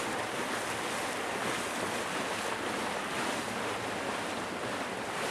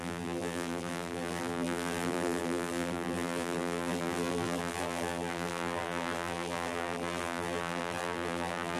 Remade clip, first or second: second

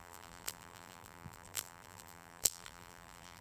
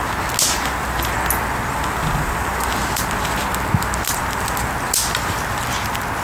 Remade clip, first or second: first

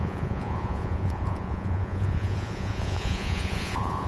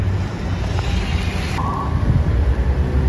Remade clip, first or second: first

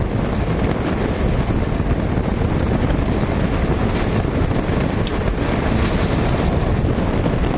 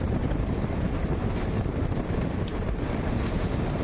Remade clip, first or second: second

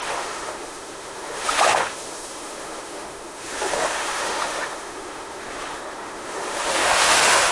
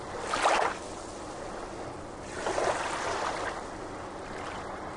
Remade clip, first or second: first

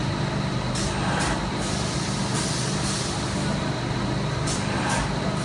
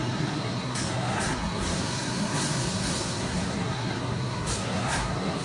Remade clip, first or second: second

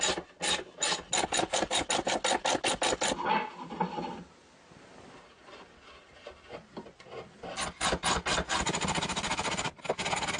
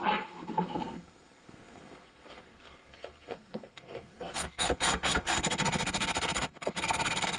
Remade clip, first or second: second